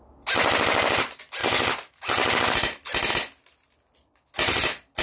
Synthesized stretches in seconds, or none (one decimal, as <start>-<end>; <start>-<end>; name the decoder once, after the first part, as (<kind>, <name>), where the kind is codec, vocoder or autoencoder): none